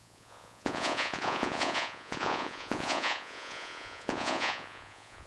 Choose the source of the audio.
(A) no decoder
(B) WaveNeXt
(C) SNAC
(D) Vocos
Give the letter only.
D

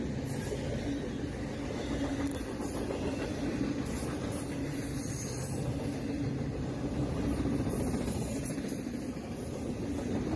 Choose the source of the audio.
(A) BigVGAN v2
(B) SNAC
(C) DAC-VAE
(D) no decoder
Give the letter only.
D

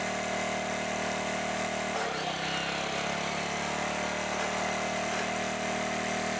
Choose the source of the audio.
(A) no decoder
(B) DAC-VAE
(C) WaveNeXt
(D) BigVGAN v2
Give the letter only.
A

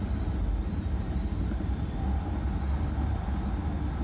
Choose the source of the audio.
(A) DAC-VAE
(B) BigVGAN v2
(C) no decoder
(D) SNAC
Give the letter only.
C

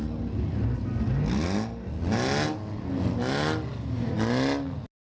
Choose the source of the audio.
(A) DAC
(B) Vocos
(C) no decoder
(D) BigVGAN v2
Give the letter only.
C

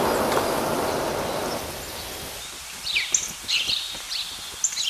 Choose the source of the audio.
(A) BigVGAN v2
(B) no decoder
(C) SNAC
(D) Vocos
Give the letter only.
B